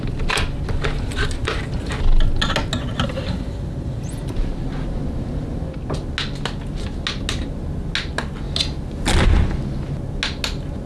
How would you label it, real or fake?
real